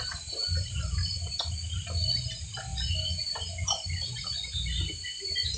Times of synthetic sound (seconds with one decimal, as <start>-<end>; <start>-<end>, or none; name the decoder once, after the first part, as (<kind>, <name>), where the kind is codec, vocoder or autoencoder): none